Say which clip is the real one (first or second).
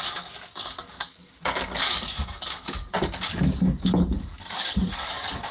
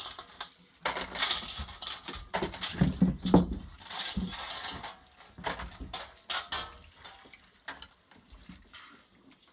second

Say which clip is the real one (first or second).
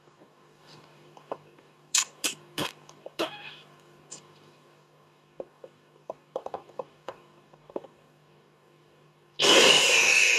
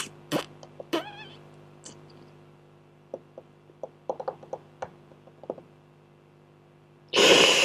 second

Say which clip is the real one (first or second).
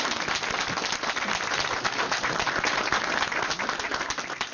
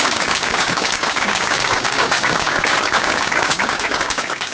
first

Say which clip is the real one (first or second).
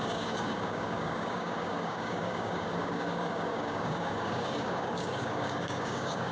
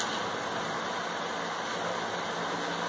second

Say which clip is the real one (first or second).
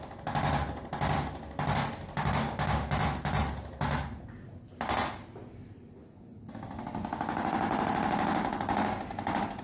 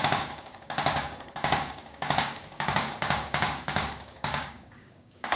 first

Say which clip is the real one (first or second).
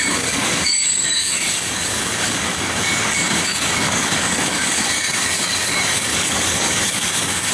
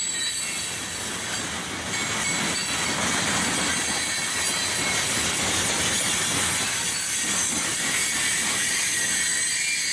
second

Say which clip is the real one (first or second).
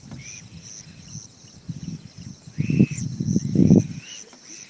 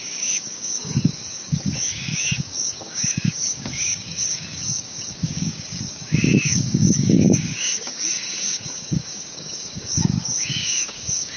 first